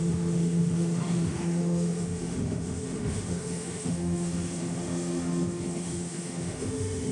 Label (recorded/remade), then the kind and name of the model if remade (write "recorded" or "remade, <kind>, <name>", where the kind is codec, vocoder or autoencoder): remade, autoencoder, DAC-VAE